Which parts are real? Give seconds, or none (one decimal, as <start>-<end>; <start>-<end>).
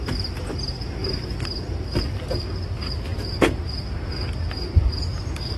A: none